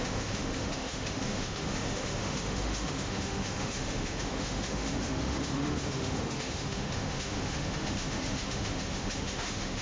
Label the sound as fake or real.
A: fake